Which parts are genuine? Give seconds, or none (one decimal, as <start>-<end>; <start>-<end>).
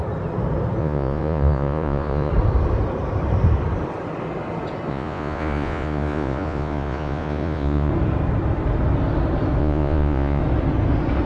0.0-0.8; 2.3-4.9; 7.9-9.6; 10.4-11.3